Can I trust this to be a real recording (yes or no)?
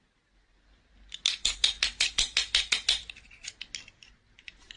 yes